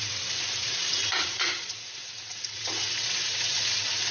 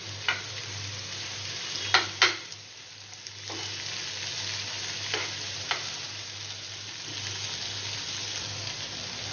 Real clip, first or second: second